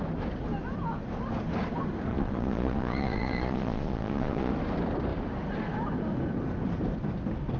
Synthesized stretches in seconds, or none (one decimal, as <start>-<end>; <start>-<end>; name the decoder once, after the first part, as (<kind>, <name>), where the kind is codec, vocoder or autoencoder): 2.1-4.5 (vocoder, Vocos)